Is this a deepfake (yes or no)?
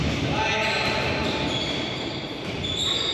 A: no